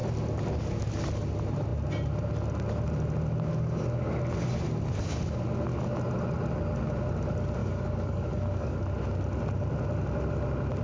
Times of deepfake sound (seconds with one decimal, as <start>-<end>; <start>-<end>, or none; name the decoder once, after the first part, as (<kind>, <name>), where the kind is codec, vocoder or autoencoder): 7.6-8.8 (codec, DAC)